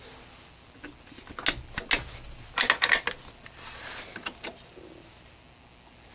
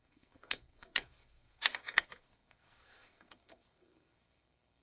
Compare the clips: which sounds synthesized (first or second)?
second